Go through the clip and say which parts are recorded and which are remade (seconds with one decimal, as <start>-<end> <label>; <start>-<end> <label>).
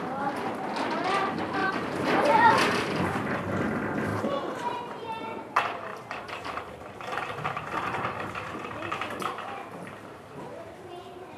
0.0-1.6 recorded; 1.6-2.6 remade; 2.6-4.1 recorded; 4.1-5.5 remade; 5.5-5.9 recorded; 5.9-11.0 remade; 11.0-11.4 recorded